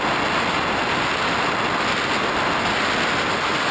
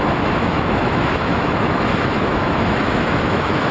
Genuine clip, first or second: first